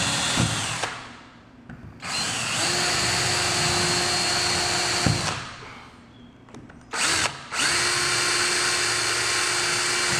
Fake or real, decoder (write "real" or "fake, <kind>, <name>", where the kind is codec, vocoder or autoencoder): real